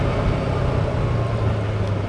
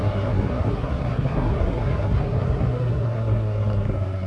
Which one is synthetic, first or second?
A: second